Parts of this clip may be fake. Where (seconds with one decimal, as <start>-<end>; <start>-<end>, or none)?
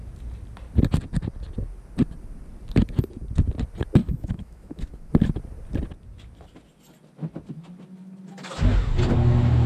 4.0-5.1